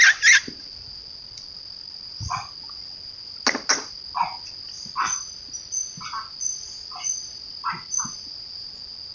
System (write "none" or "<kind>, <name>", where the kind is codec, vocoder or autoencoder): none